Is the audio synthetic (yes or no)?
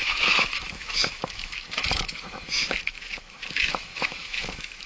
yes